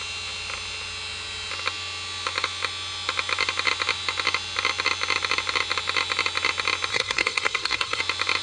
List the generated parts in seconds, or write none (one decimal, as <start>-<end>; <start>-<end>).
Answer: 6.9-8.0